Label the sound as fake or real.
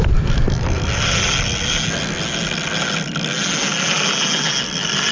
real